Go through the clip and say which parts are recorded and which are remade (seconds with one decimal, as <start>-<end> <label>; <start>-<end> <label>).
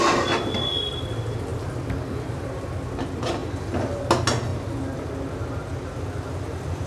0.0-3.4 recorded; 3.4-4.0 remade; 4.0-6.9 recorded